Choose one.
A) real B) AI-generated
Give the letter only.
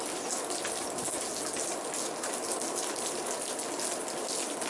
A